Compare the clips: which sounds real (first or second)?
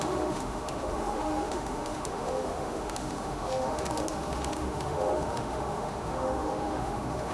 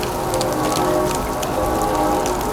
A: second